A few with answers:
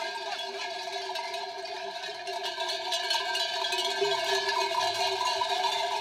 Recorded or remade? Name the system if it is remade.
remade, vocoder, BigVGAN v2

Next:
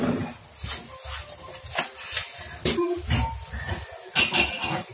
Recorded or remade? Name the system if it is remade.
recorded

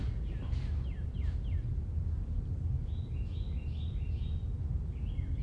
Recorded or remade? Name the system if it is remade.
recorded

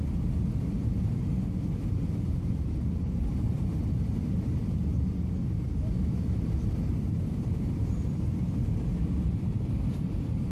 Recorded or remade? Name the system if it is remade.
remade, vocoder, BigVGAN v2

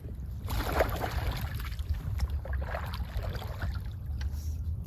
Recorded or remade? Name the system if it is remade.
recorded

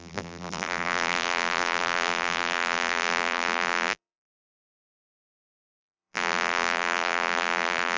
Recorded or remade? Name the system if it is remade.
remade, vocoder, BigVGAN v2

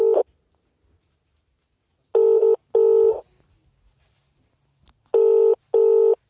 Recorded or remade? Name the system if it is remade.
recorded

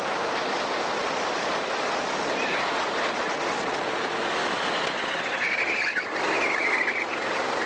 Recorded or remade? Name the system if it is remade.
recorded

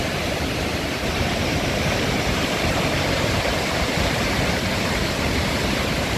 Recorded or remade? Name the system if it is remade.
remade, vocoder, BigVGAN v2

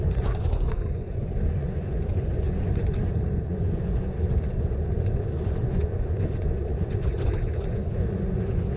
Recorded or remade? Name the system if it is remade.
remade, vocoder, Vocos